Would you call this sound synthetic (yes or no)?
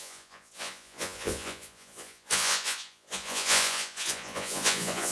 yes